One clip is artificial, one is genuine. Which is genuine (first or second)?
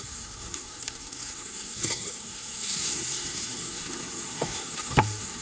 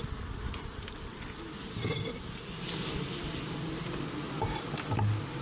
second